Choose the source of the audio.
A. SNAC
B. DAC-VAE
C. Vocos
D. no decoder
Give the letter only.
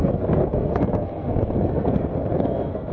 A